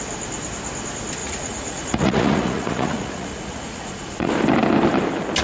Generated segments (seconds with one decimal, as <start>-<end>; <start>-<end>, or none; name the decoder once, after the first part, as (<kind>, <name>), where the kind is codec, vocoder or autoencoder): 1.2-4.3 (vocoder, Vocos)